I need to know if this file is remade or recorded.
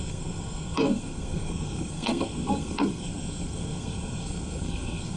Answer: remade